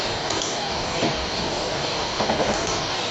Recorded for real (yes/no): no